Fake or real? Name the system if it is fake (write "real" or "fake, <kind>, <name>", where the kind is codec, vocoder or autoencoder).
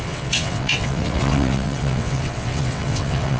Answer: fake, vocoder, WaveNeXt